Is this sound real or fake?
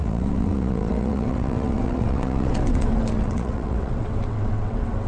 fake